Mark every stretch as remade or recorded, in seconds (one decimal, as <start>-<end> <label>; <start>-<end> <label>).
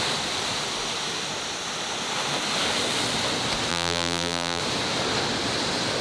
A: 0.0-3.7 recorded; 3.7-4.6 remade; 4.6-6.0 recorded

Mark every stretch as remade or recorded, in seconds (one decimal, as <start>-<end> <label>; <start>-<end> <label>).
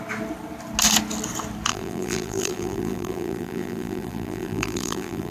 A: 0.0-1.7 recorded; 1.7-5.3 remade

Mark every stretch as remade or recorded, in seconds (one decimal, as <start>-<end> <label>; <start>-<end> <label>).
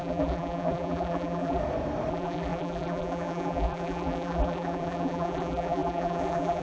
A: 0.0-1.6 remade; 1.6-2.1 recorded; 2.1-6.6 remade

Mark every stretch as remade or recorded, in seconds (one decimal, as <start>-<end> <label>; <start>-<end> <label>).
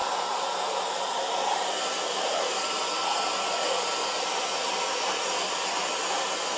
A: 0.0-2.8 remade; 2.8-6.6 recorded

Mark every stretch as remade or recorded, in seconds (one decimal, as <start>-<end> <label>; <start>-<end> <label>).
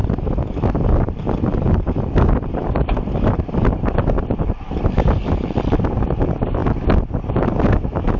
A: 0.0-0.6 recorded; 0.6-6.6 remade; 6.6-8.2 recorded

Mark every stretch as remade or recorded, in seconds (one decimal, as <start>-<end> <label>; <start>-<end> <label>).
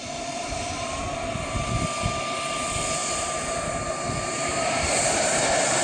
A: 0.0-0.4 recorded; 0.4-1.0 remade; 1.0-3.0 recorded; 3.0-5.8 remade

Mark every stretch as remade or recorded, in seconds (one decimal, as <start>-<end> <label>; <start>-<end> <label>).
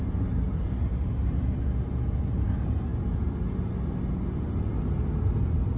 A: 0.0-0.9 remade; 0.9-2.2 recorded; 2.2-2.9 remade; 2.9-5.8 recorded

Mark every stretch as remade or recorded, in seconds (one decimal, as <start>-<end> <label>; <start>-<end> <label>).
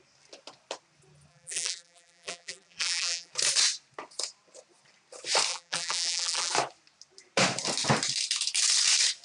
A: 0.0-1.3 recorded; 1.3-3.3 remade; 3.3-5.5 recorded; 5.5-6.5 remade; 6.5-9.2 recorded